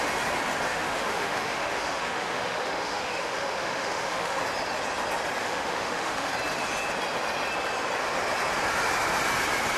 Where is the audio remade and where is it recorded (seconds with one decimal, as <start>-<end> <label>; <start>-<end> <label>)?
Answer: 0.0-0.7 recorded; 0.7-4.4 remade; 4.4-5.4 recorded; 5.4-6.3 remade; 6.3-9.8 recorded